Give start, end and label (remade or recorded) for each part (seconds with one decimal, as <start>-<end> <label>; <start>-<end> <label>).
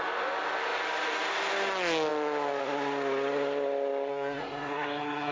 0.0-4.1 recorded; 4.1-5.3 remade